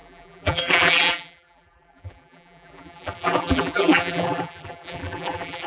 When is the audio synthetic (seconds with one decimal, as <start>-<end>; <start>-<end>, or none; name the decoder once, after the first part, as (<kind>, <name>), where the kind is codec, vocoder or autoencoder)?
0.0-5.7 (vocoder, BigVGAN v2)